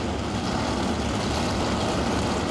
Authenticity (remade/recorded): recorded